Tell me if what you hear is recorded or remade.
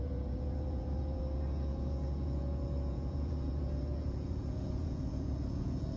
remade